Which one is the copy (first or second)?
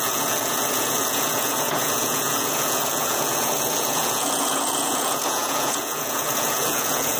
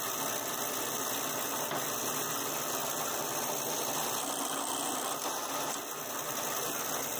first